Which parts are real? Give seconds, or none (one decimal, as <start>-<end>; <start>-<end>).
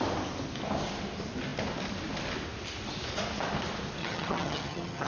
0.0-4.0